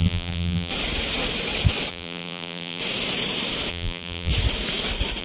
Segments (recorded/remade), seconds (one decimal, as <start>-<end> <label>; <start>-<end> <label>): 0.0-0.7 remade; 0.7-1.9 recorded; 1.9-2.8 remade; 2.8-3.7 recorded; 3.7-4.3 remade; 4.3-5.2 recorded

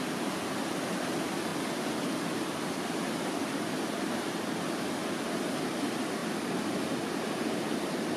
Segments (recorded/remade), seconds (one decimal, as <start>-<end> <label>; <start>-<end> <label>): 0.0-8.2 recorded